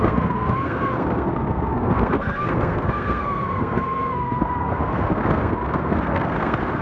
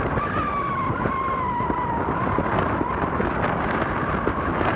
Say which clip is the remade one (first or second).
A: first